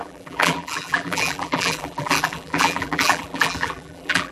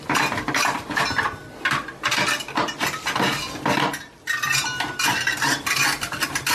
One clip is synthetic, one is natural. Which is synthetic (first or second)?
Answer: first